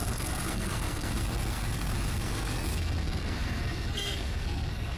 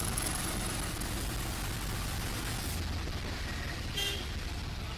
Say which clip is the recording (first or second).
second